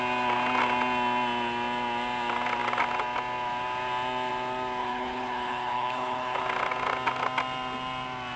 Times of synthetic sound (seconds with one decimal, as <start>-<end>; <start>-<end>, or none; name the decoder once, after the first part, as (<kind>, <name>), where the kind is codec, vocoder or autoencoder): 4.8-6.4 (codec, HILCodec)